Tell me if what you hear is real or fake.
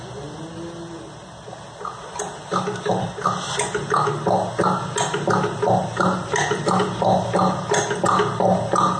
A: real